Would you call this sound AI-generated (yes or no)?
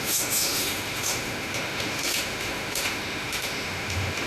yes